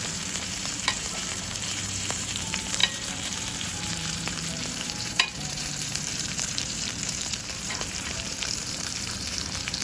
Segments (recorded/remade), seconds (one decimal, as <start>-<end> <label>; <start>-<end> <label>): 0.0-9.8 remade